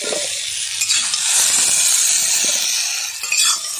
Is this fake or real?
real